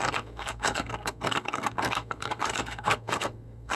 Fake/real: fake